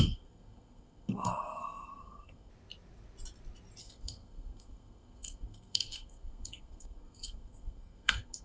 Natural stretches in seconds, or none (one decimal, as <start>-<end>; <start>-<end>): 2.5-3.8